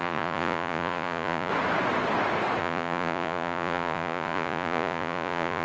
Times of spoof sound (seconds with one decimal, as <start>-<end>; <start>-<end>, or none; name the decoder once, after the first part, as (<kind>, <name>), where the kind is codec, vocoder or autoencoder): 0.0-1.5 (vocoder, Vocos); 2.6-5.6